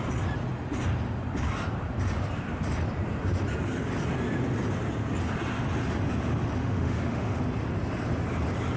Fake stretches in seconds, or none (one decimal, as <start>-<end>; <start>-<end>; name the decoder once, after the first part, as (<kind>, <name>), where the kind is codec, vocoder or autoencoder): 6.6-7.4 (autoencoder, DAC-VAE)